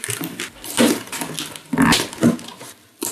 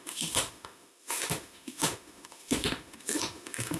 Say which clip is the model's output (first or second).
second